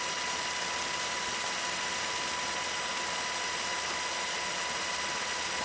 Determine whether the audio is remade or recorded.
recorded